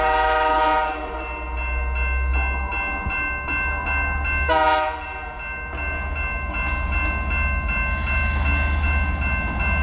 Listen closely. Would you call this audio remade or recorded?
recorded